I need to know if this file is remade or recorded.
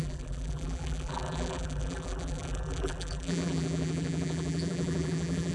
remade